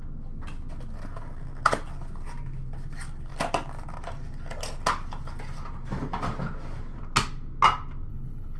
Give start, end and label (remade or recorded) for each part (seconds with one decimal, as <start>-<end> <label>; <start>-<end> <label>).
0.0-8.1 recorded; 8.1-8.6 remade